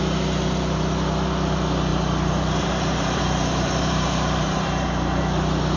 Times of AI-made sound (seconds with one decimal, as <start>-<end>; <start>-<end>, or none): 1.9-5.2